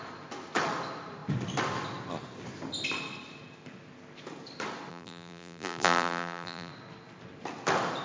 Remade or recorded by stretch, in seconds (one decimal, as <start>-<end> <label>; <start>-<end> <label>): 0.0-4.9 recorded; 4.9-6.7 remade; 6.7-8.0 recorded